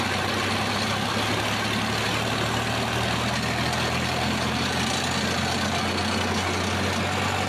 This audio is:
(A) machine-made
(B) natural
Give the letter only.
B